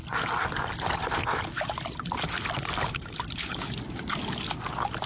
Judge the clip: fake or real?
real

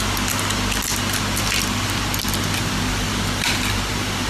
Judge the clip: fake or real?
real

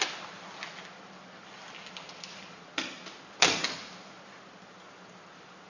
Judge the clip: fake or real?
real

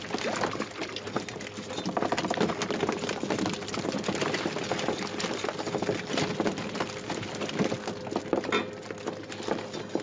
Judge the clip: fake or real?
real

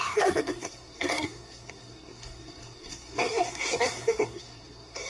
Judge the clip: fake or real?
fake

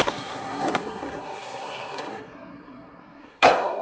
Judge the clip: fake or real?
fake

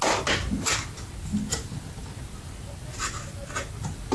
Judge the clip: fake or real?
real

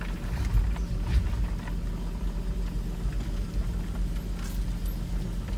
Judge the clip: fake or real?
real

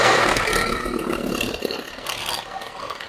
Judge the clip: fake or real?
fake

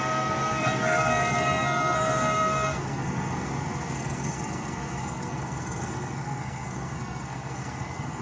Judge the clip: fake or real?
fake